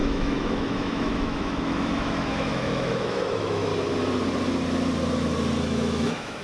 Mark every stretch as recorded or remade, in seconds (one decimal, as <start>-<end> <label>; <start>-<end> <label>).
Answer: 0.0-3.7 remade; 3.7-5.6 recorded; 5.6-6.4 remade